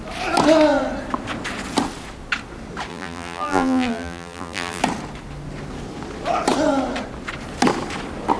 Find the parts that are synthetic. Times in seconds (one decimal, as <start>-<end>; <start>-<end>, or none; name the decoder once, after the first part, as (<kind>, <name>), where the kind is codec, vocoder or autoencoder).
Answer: 2.9-4.8 (vocoder, BigVGAN v2)